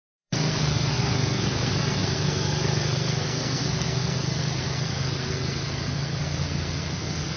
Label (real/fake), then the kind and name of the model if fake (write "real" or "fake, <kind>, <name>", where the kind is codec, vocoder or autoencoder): fake, codec, SNAC